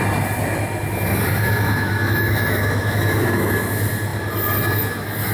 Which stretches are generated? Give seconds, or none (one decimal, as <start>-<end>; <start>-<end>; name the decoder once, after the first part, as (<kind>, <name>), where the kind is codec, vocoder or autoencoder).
1.3-3.6 (autoencoder, DAC-VAE)